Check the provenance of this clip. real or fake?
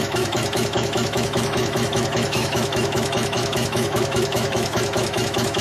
fake